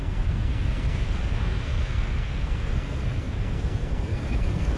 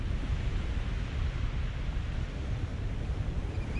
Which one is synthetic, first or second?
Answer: first